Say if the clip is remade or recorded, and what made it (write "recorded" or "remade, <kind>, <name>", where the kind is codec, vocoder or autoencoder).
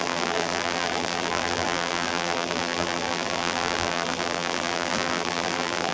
remade, vocoder, BigVGAN v2